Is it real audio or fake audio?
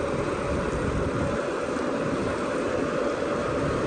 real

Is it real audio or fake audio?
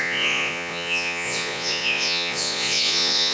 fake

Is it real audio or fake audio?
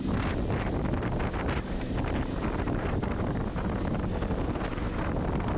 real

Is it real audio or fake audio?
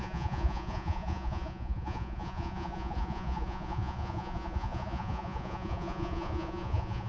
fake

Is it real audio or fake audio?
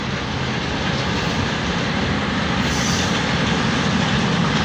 real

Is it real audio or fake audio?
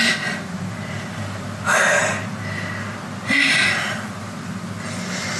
real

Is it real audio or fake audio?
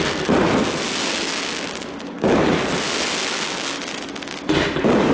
real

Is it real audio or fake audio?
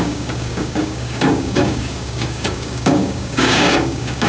fake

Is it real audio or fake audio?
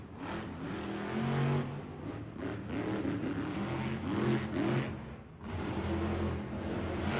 real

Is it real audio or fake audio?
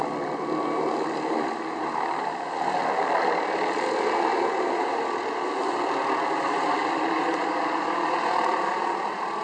real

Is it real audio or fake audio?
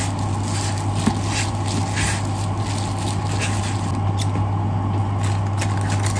real